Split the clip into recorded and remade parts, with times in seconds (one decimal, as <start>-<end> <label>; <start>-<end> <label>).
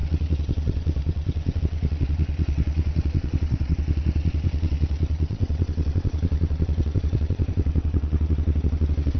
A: 0.0-9.2 remade